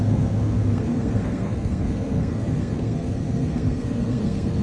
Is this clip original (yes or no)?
no